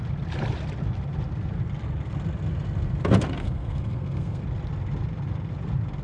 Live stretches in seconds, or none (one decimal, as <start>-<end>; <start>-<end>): 0.0-3.4; 4.4-6.0